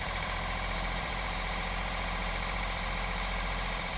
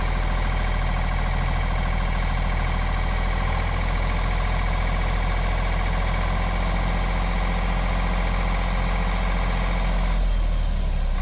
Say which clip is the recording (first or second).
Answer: second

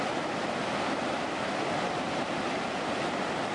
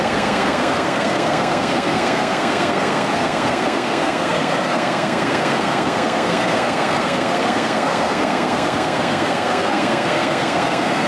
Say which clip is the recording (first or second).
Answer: first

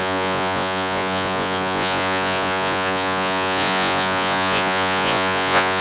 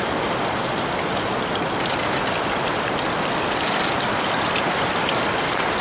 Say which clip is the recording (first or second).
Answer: second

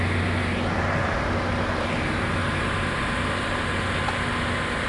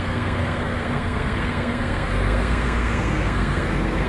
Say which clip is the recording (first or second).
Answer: first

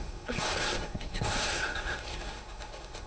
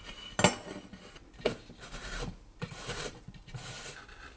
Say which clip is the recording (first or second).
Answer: second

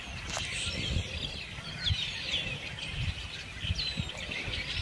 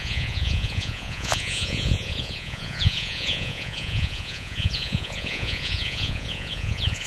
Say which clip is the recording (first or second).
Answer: first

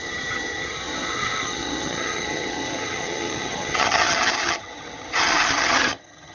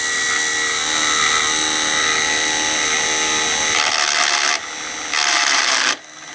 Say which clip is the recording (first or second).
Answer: second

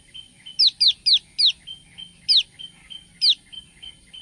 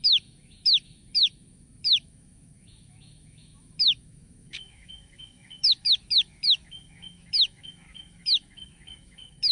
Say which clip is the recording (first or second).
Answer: first